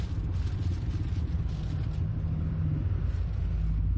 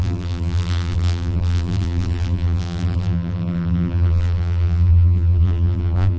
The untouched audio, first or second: first